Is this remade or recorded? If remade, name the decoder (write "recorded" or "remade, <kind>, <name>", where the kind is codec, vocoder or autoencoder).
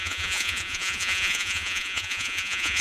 remade, vocoder, Vocos